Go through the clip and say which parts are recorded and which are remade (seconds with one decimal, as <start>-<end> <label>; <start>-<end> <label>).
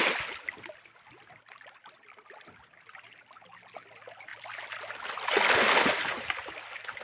0.0-7.0 recorded